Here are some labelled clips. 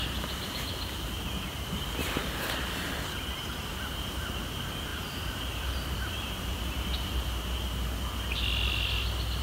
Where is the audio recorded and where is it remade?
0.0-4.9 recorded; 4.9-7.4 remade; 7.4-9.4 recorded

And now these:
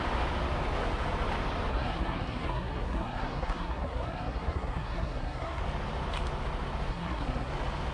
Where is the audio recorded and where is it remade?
0.0-1.7 recorded; 1.7-5.6 remade; 5.6-6.9 recorded; 6.9-7.5 remade; 7.5-7.9 recorded

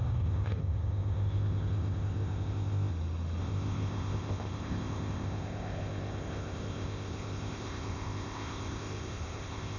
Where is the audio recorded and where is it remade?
0.0-2.9 remade; 2.9-3.4 recorded; 3.4-9.8 remade

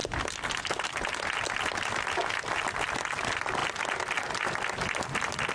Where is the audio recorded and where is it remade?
0.0-5.5 recorded

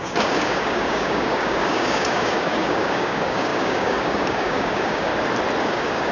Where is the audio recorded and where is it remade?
0.0-5.1 remade; 5.1-5.6 recorded; 5.6-6.1 remade

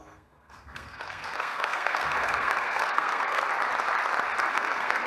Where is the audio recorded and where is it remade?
0.0-3.5 remade; 3.5-4.5 recorded; 4.5-5.1 remade